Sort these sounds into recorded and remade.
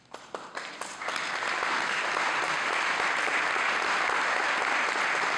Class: recorded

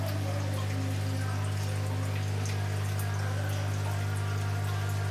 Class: recorded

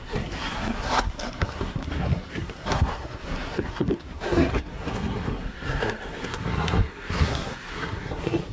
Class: remade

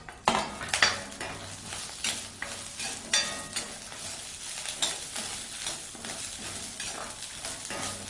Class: recorded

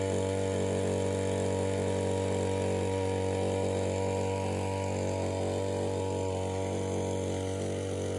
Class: recorded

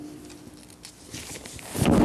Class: recorded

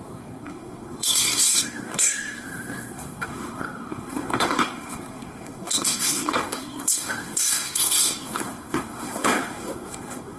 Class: remade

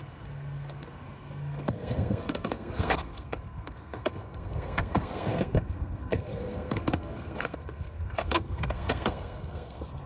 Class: remade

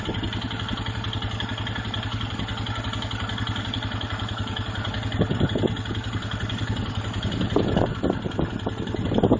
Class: recorded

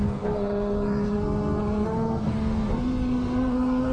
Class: remade